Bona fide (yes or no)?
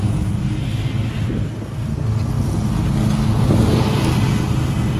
yes